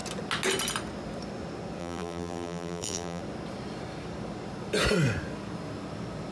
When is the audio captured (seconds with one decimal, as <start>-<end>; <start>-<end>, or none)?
0.0-1.8; 3.2-6.3